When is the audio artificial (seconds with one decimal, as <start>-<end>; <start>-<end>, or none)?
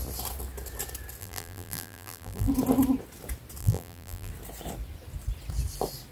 1.2-2.5; 3.6-4.3